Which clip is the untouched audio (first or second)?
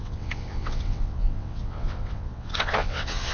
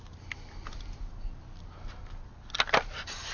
second